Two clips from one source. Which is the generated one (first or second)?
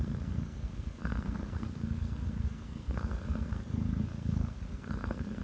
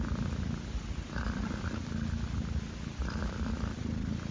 first